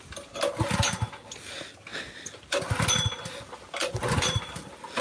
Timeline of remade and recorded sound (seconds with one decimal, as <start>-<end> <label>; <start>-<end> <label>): 0.0-5.0 recorded